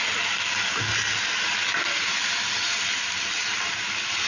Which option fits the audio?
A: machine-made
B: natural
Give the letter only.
B